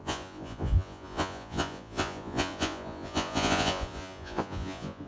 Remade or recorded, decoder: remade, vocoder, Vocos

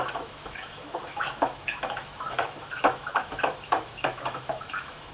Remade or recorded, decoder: remade, autoencoder, DAC-VAE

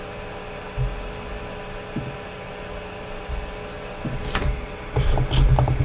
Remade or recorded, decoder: recorded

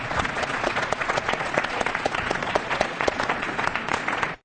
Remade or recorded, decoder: remade, vocoder, Vocos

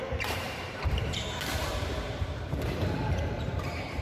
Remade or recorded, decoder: remade, vocoder, BigVGAN v2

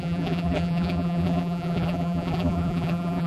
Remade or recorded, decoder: remade, vocoder, BigVGAN v2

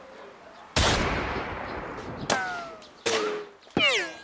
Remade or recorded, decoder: recorded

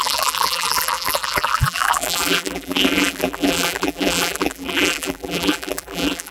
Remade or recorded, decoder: remade, vocoder, BigVGAN v2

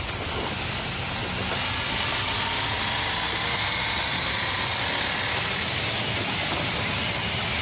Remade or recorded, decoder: recorded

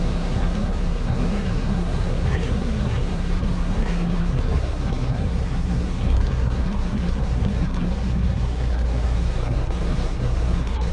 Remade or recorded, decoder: remade, codec, SNAC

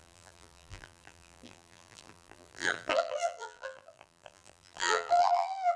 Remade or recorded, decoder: remade, vocoder, BigVGAN v2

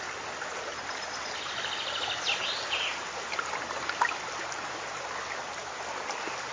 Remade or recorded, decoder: recorded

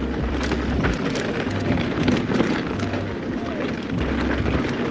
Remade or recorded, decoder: recorded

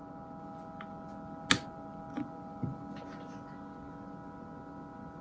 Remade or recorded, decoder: recorded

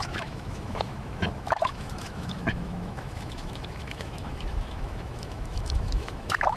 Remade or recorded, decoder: remade, autoencoder, DAC-VAE